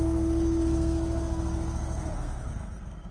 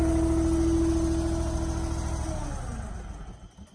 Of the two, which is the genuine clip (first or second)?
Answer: second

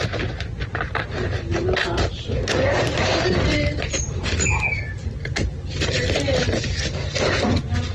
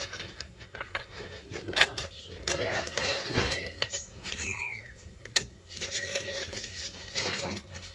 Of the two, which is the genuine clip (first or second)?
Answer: first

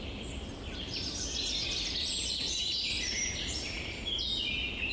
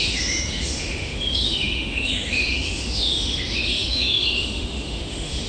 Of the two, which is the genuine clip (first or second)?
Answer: first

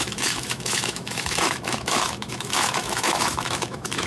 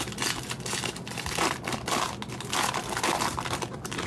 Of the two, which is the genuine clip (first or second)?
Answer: second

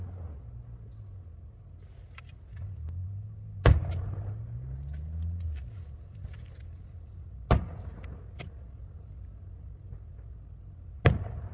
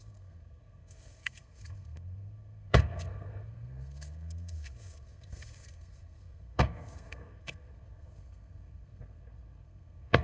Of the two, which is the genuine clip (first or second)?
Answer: first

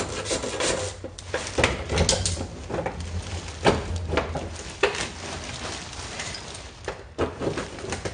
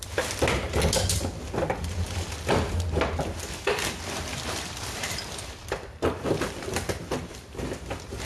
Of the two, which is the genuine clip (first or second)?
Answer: first